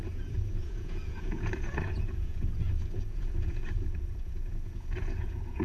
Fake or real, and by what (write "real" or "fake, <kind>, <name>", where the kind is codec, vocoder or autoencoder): fake, vocoder, Vocos